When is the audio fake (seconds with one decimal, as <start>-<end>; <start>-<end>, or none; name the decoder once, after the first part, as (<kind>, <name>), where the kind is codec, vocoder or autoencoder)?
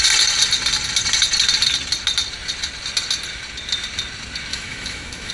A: 4.5-5.3 (autoencoder, DAC-VAE)